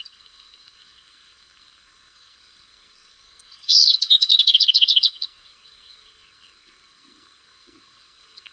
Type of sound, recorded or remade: remade